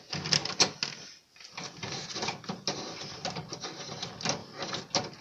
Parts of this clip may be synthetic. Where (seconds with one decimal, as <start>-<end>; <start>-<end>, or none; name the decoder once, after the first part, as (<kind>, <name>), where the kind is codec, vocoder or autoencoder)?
none